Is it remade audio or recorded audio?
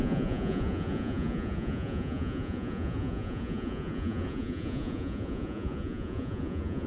remade